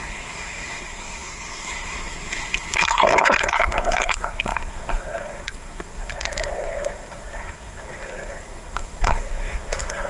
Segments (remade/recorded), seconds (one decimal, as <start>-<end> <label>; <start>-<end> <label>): 0.0-10.1 remade